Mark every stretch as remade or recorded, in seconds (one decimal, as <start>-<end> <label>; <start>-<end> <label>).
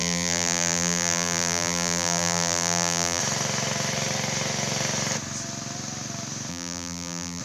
0.0-3.2 remade; 3.2-6.5 recorded; 6.5-7.4 remade